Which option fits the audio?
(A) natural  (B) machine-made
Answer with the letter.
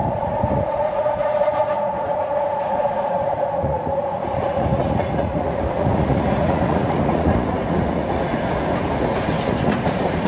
B